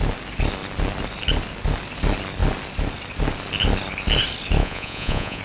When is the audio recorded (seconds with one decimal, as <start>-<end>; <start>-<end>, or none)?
0.0-4.6